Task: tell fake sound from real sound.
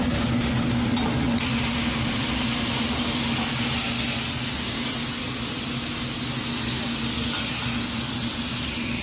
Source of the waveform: real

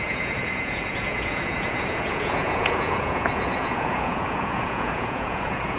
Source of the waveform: fake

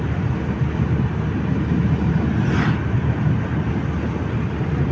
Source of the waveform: real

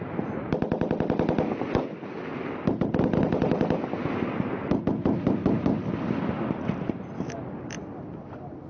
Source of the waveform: real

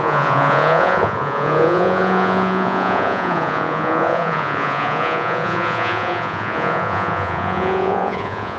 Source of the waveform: fake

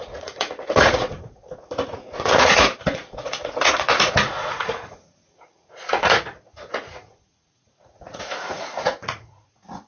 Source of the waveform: fake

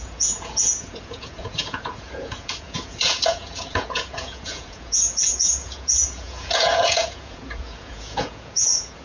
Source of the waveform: fake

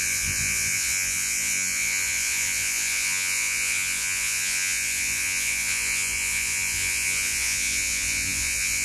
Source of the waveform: fake